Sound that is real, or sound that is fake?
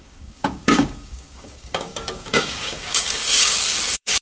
fake